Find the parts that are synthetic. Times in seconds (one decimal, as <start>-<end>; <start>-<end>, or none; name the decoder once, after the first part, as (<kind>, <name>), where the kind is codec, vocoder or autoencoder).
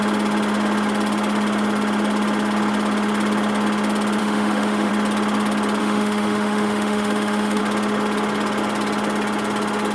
4.2-4.9 (autoencoder, DAC-VAE); 5.8-7.6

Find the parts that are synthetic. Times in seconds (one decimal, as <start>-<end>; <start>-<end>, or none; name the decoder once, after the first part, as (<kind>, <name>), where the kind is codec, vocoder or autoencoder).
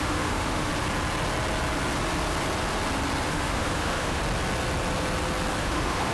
0.0-0.7 (autoencoder, DAC-VAE); 3.3-4.2; 5.6-6.1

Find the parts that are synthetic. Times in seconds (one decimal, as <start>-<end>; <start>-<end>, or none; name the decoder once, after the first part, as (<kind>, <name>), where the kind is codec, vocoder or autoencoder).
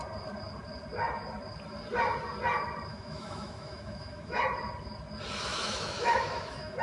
2.9-4.4 (autoencoder, DAC-VAE); 5.5-6.8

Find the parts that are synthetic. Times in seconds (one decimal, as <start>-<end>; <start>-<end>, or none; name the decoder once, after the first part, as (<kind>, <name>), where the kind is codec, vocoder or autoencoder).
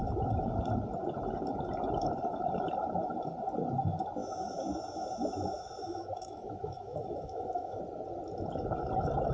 4.2-7.8 (autoencoder, DAC-VAE)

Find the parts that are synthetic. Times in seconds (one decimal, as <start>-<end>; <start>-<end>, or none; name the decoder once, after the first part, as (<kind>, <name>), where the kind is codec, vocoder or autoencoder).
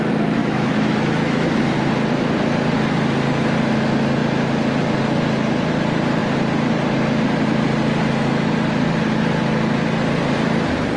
0.4-1.6 (autoencoder, DAC-VAE)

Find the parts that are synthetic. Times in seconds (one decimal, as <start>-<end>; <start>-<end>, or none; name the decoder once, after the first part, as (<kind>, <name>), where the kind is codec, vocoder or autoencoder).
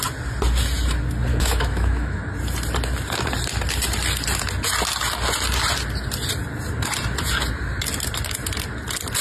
1.3-2.2 (autoencoder, DAC-VAE)